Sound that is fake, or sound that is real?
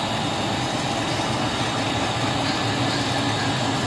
real